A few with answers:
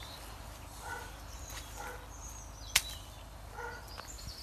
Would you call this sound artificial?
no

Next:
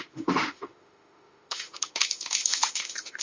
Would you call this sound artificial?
yes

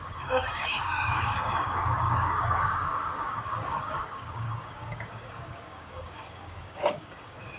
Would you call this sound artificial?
yes